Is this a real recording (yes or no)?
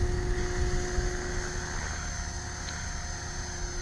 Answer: yes